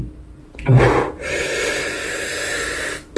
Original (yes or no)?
yes